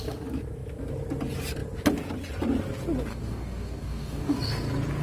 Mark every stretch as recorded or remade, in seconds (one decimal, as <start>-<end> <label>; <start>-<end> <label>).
0.0-3.1 recorded; 3.1-4.4 remade; 4.4-5.0 recorded